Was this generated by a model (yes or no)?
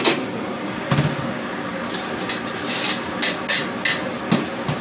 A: no